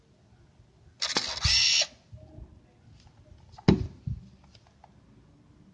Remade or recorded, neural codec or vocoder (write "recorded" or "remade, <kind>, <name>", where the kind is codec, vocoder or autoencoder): recorded